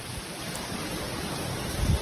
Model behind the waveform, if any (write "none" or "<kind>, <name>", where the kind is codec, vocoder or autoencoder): none